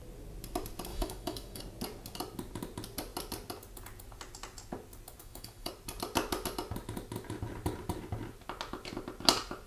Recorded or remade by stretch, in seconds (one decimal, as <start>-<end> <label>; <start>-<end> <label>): 0.0-0.9 recorded; 0.9-1.6 remade; 1.6-5.2 recorded; 5.2-5.7 remade; 5.7-9.7 recorded